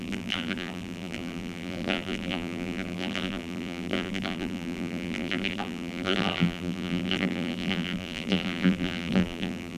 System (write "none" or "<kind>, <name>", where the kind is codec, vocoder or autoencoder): vocoder, BigVGAN v2